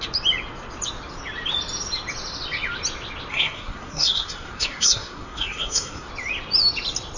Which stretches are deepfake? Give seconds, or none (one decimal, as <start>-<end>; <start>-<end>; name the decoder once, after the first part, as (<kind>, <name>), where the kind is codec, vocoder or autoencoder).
3.3-6.1 (codec, SNAC)